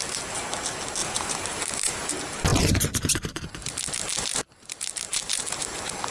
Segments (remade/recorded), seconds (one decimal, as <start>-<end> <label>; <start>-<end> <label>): 0.0-1.0 recorded; 1.0-2.1 remade; 2.1-2.5 recorded; 2.5-3.4 remade; 3.4-5.1 recorded; 5.1-5.6 remade; 5.6-6.1 recorded

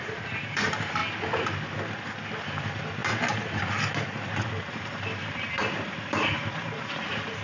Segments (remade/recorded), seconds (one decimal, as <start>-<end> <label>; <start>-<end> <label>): 0.0-1.0 remade; 1.0-2.4 recorded; 2.4-3.0 remade; 3.0-4.7 recorded; 4.7-7.4 remade